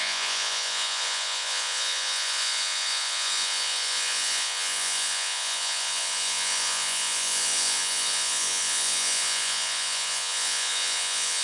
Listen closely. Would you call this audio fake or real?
fake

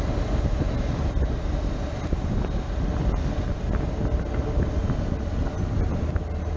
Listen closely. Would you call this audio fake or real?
real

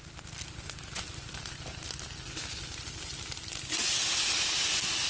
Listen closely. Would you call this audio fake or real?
real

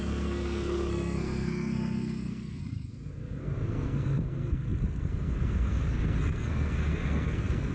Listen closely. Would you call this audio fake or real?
fake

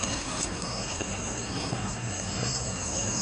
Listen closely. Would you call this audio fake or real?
fake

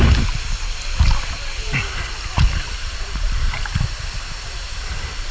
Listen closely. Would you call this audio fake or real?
real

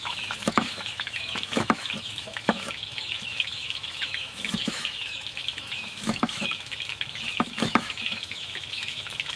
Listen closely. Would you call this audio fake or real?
fake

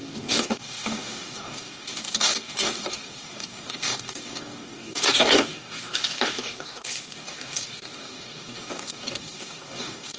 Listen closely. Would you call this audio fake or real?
fake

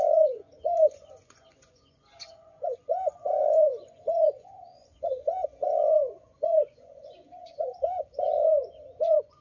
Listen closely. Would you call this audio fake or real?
fake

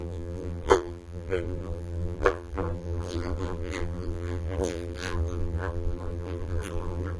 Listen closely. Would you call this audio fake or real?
fake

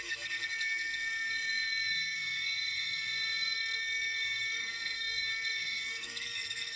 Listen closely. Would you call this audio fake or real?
fake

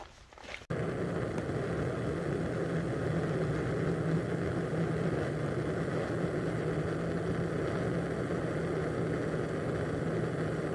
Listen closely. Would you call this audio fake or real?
real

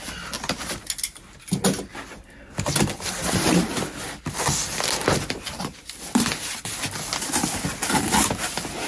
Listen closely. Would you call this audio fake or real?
real